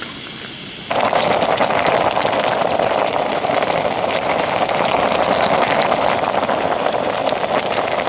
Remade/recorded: remade